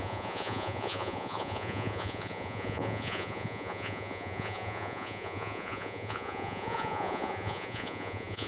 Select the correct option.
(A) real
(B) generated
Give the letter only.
B